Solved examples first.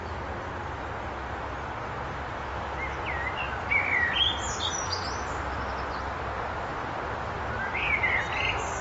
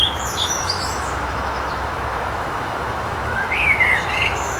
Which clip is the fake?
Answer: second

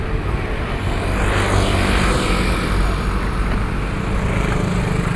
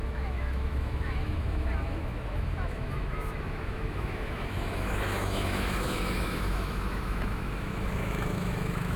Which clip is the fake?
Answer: second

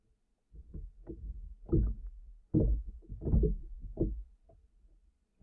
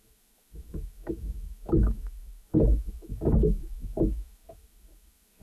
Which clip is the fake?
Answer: second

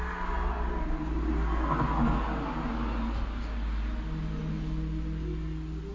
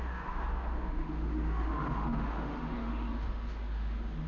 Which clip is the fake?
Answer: second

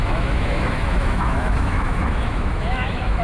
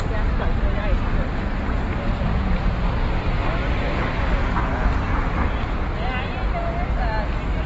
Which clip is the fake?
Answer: first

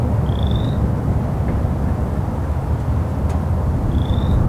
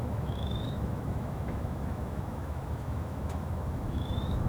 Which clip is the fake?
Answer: second